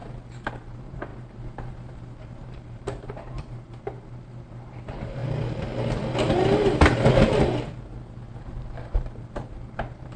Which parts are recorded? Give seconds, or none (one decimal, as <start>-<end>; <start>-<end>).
0.0-0.5; 5.2-8.4